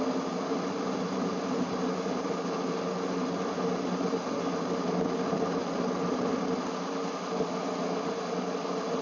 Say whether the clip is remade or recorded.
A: recorded